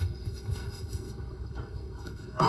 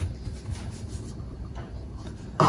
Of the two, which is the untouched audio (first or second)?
second